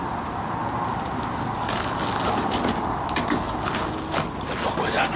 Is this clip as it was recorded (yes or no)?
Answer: yes